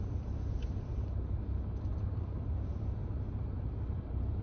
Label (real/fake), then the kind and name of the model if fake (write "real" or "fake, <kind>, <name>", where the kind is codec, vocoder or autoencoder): fake, vocoder, BigVGAN v2